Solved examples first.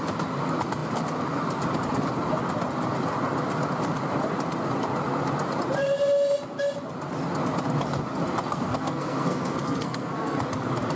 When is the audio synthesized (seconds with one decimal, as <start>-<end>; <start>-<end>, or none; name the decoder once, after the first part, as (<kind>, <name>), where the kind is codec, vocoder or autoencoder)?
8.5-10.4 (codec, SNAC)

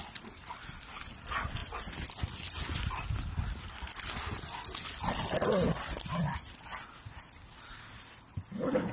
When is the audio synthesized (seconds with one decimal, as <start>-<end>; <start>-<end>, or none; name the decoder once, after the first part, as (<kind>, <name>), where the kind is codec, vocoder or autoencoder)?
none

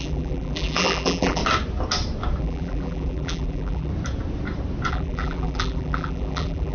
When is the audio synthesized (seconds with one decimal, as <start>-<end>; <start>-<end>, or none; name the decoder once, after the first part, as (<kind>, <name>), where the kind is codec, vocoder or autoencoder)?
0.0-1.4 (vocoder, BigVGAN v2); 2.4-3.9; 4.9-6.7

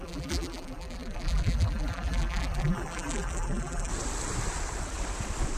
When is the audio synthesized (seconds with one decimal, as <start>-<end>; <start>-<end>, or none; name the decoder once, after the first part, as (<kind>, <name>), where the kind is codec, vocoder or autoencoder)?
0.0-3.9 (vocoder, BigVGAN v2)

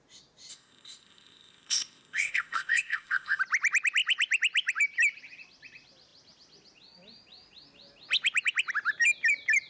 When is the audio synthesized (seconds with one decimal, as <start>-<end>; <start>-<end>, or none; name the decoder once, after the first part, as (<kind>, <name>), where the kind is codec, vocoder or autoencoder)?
0.5-3.4 (codec, ZipCodec)

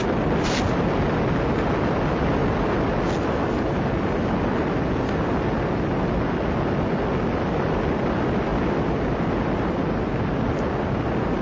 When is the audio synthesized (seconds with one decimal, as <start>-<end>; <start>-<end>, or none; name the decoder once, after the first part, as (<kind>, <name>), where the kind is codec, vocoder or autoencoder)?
none

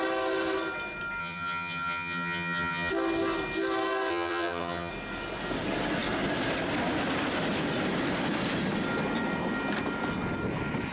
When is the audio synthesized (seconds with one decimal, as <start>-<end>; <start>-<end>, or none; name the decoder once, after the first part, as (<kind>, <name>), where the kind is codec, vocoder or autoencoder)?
1.2-2.9 (vocoder, HiFi-GAN); 4.1-4.9

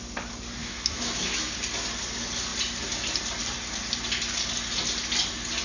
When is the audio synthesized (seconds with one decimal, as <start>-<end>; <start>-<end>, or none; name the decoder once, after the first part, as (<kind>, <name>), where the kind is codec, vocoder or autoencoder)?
0.6-1.5 (autoencoder, DAC-VAE)